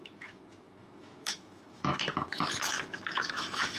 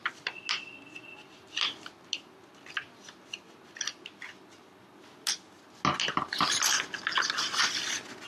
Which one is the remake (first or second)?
first